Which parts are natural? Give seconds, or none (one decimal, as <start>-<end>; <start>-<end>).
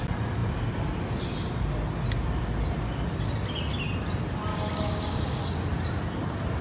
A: 0.0-4.5; 5.4-6.6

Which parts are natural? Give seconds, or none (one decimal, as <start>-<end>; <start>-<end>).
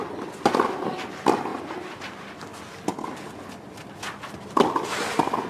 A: 0.0-5.5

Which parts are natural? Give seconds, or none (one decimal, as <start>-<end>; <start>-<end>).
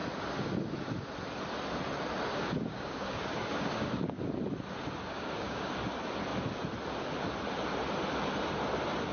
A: 0.0-2.3; 4.2-5.0; 5.7-9.1